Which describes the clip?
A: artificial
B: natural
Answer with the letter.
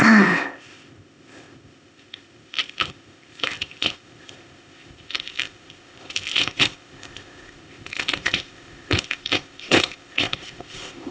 A